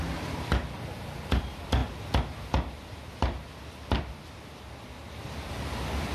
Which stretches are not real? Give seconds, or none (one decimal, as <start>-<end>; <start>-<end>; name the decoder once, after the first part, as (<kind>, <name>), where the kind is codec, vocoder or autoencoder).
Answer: none